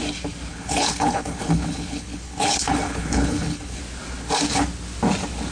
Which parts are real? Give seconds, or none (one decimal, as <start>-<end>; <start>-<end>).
0.0-0.5; 3.8-5.5